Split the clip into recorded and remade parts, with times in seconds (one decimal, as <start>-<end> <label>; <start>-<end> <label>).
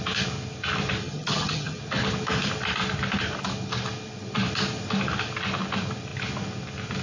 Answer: 0.0-1.0 recorded; 1.0-1.8 remade; 1.8-7.0 recorded